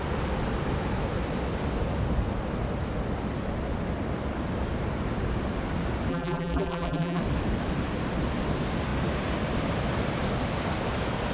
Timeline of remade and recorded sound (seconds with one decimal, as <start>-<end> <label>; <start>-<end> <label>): 0.0-6.1 recorded; 6.1-7.2 remade; 7.2-11.3 recorded